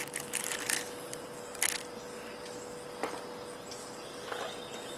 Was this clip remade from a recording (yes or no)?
no